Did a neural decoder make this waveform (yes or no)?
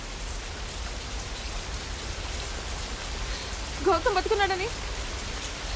no